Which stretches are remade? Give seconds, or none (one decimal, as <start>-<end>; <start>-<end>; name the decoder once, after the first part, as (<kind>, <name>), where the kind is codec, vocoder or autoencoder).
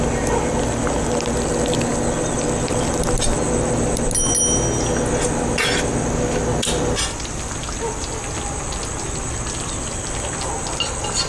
none